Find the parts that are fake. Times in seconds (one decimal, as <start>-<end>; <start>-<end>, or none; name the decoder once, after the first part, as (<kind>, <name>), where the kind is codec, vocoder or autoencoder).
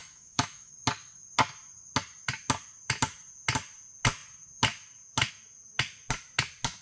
0.0-0.7 (autoencoder, DAC-VAE)